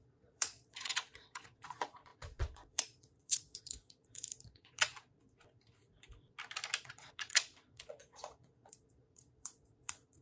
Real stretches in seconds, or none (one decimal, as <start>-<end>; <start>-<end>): 5.1-6.8